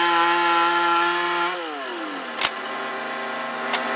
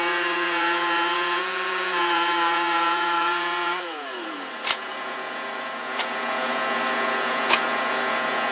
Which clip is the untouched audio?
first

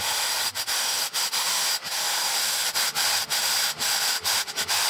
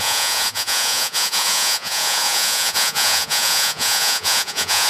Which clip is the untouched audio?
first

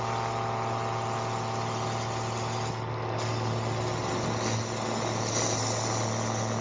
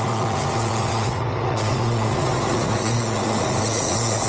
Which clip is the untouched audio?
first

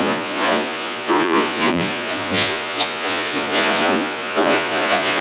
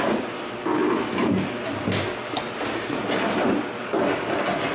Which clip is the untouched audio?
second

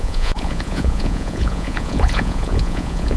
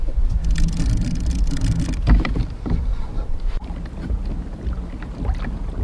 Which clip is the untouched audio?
second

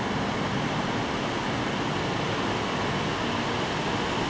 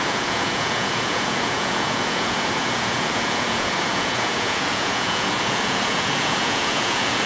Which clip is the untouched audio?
first